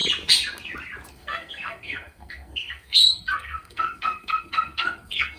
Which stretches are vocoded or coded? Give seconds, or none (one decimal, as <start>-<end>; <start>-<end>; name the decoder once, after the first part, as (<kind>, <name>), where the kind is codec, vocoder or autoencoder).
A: 1.1-5.4 (codec, SNAC)